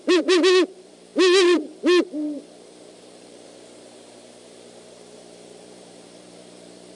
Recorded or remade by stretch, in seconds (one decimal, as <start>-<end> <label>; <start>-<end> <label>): 0.0-7.0 remade

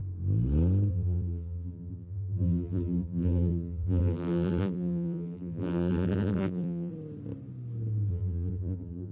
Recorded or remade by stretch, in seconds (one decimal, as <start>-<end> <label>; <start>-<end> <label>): 0.0-0.9 recorded; 0.9-6.9 remade; 6.9-8.1 recorded; 8.1-9.1 remade

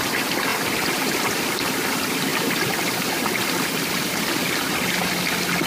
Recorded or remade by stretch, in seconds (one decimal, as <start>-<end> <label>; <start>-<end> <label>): 0.0-2.3 recorded; 2.3-4.2 remade; 4.2-5.7 recorded

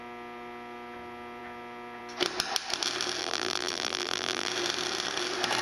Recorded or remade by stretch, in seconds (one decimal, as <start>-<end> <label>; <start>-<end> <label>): 0.0-3.2 recorded; 3.2-4.5 remade; 4.5-5.6 recorded